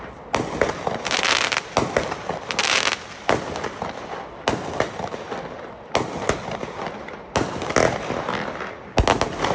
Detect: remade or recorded recorded